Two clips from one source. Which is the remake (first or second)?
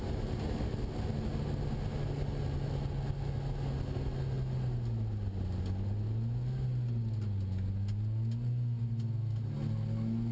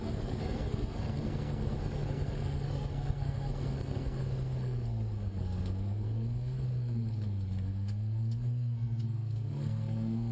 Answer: second